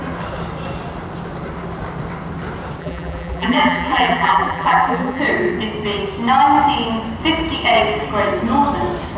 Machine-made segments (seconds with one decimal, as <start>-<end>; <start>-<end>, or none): 2.8-5.2